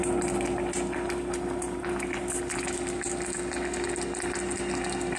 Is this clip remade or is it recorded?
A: recorded